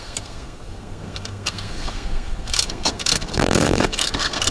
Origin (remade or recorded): remade